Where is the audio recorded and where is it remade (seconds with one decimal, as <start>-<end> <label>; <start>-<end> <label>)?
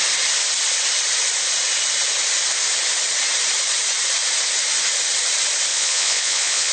0.0-5.7 recorded; 5.7-6.7 remade